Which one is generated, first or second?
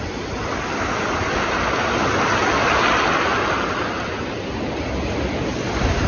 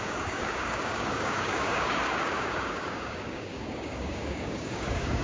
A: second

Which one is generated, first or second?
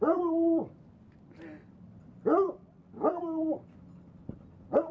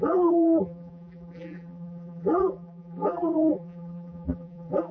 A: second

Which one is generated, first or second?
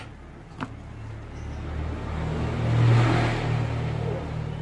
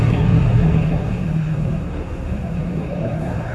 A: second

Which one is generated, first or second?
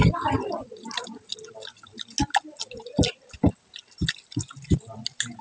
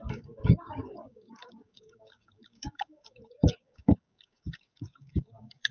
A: second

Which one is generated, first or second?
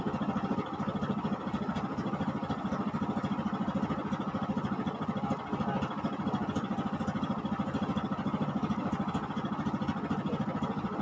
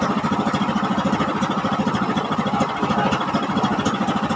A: second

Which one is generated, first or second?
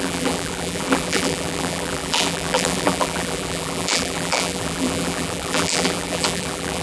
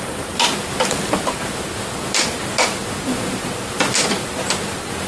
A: first